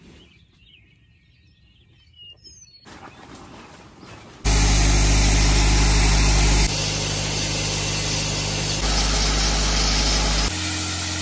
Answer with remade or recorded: recorded